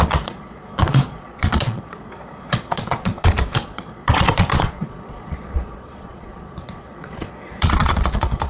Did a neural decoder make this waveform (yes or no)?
yes